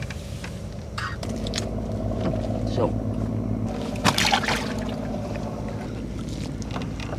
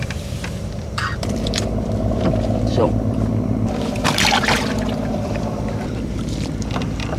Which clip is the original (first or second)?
first